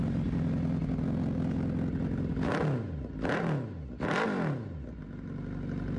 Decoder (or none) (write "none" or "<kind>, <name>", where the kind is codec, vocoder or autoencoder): none